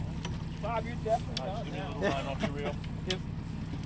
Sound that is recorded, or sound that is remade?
recorded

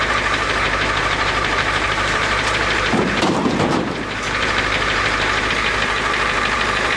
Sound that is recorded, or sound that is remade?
remade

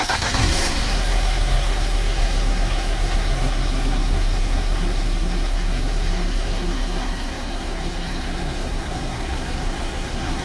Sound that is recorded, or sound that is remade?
remade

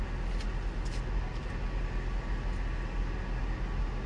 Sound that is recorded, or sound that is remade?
recorded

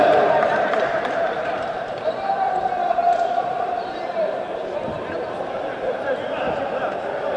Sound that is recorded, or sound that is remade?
remade